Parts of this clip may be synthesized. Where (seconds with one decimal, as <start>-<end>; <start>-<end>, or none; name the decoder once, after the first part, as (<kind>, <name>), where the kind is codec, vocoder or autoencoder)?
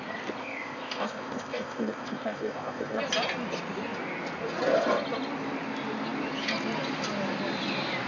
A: 0.4-3.0 (codec, ZipCodec)